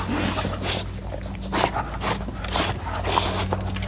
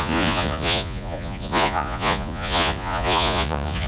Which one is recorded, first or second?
first